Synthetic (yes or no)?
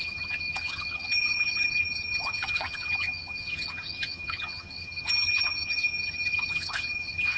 yes